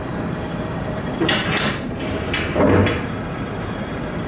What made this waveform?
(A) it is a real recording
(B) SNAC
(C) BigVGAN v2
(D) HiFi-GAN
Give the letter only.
C